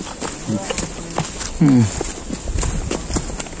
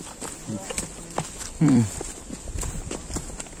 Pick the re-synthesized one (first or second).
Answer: second